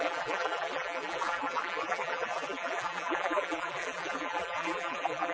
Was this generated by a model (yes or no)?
yes